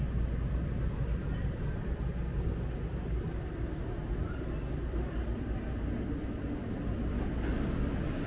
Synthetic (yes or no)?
no